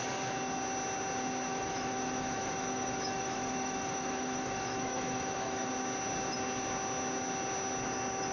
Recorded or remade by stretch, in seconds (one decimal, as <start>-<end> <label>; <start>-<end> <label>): 0.0-1.5 recorded; 1.5-5.7 remade; 5.7-8.3 recorded